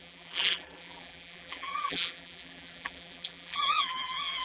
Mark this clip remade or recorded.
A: remade